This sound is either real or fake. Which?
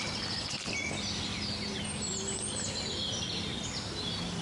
real